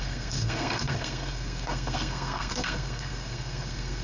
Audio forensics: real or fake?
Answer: fake